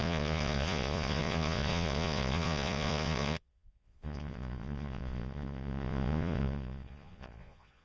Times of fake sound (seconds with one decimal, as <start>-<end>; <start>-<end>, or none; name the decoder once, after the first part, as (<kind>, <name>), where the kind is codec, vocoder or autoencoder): 0.0-7.8 (vocoder, Vocos)